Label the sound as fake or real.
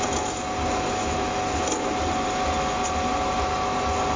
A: real